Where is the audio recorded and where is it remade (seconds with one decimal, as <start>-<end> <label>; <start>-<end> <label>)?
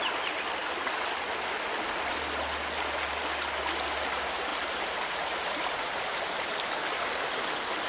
0.0-4.5 recorded; 4.5-6.7 remade; 6.7-7.9 recorded